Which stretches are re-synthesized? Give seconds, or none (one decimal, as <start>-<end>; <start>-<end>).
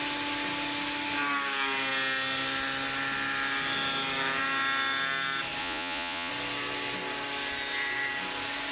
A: 5.6-6.3